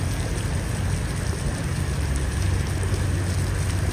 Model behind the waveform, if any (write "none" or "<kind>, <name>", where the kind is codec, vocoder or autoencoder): none